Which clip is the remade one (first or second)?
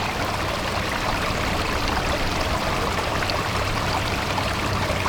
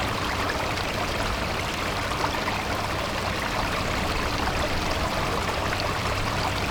first